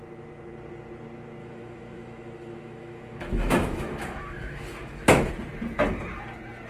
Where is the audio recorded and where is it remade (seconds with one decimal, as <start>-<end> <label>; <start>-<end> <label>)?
0.0-1.4 recorded; 1.4-5.3 remade; 5.3-6.7 recorded